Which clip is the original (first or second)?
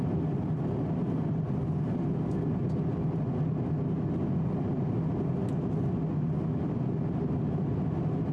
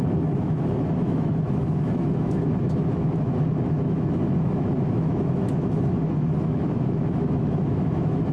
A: first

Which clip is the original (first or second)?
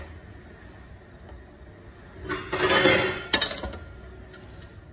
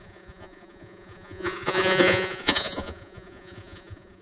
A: first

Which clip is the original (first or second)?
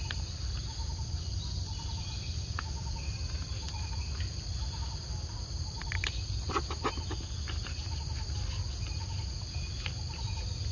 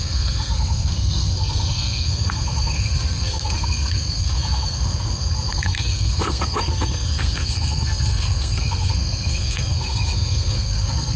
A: first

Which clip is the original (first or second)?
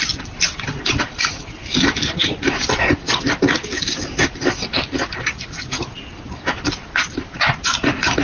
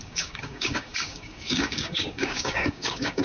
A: first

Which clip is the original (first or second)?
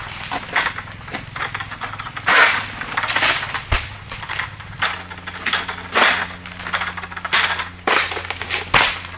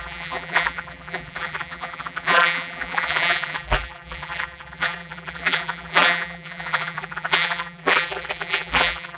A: first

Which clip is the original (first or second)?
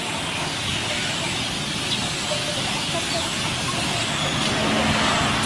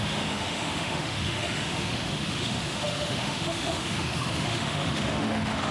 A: first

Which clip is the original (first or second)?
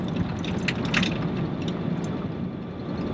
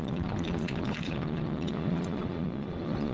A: first